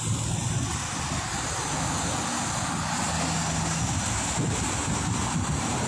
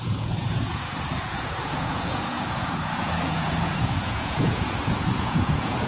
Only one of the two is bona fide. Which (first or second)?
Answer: first